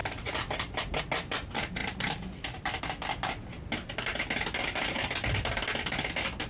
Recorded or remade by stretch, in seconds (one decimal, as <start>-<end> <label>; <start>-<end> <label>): 0.0-1.0 remade; 1.0-1.8 recorded; 1.8-2.8 remade; 2.8-6.5 recorded